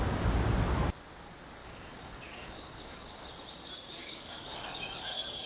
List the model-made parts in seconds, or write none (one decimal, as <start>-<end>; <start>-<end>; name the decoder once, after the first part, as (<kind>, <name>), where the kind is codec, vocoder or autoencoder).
1.6-3.1 (codec, DAC); 4.0-5.5